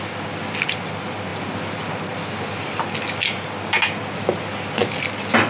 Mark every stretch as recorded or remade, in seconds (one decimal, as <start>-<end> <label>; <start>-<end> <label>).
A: 0.0-5.5 recorded

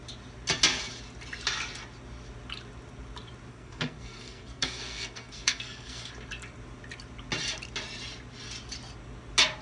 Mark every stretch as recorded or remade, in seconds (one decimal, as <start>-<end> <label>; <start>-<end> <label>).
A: 0.0-3.5 recorded; 3.5-6.1 remade; 6.1-9.6 recorded